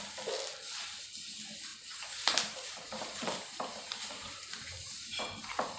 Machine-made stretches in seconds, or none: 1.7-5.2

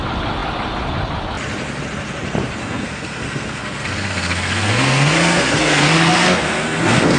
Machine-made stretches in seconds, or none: 2.6-7.2

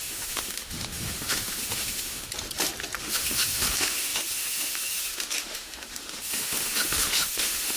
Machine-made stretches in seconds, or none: 0.0-2.3; 3.0-7.8

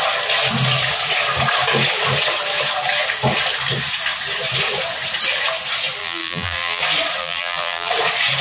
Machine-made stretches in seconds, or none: 6.0-6.8; 7.2-7.9

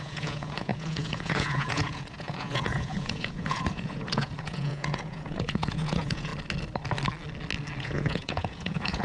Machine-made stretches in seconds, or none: 0.0-6.3; 7.8-9.0

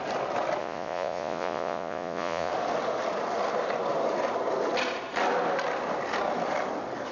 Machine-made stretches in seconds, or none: 0.6-2.5

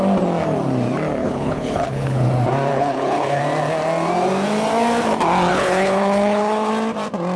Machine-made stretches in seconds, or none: 1.2-2.3; 2.7-3.4; 5.5-6.7

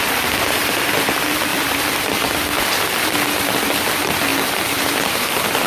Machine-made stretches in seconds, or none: 1.5-2.6; 4.3-5.3